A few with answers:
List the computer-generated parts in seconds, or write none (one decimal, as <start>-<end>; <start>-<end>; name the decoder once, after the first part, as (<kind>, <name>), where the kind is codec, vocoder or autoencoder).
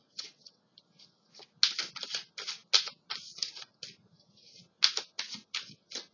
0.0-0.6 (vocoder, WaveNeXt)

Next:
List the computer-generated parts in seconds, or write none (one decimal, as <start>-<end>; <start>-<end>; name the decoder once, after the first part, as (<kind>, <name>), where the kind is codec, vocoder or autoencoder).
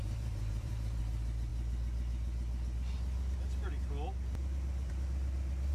0.0-1.0 (vocoder, BigVGAN v2)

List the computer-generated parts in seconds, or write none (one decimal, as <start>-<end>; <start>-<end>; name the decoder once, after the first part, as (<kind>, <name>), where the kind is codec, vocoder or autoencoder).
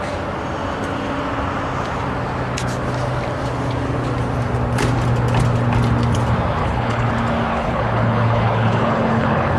6.6-7.1 (codec, HILCodec); 7.5-9.6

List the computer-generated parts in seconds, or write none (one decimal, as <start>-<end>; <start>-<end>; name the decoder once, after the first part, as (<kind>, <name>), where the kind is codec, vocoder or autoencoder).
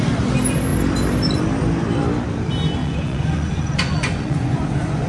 2.8-5.1 (vocoder, Vocos)